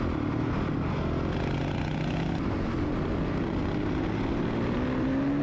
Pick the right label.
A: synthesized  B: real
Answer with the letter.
B